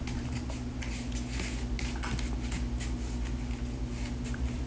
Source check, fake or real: real